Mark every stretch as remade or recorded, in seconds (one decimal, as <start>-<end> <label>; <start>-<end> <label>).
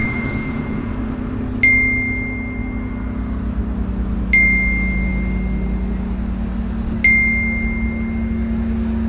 0.0-0.9 remade; 0.9-9.1 recorded